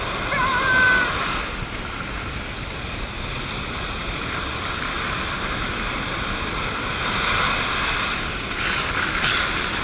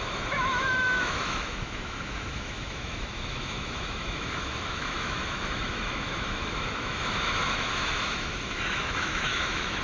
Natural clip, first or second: first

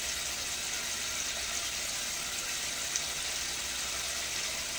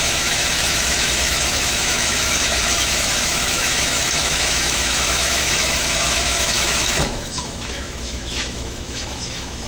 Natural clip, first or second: first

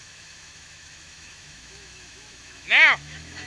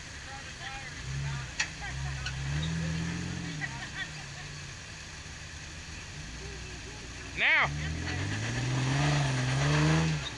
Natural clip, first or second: second